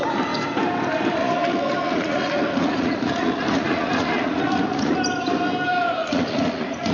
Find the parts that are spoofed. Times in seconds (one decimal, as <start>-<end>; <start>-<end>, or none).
1.2-5.0; 6.0-6.9